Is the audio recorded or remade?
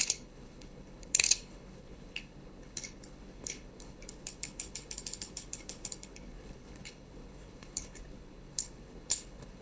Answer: remade